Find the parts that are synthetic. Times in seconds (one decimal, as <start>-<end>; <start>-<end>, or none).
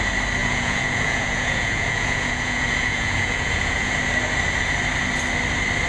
0.4-3.9